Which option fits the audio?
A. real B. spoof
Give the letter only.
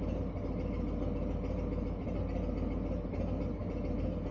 A